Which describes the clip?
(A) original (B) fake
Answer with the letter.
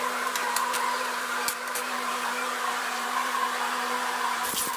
B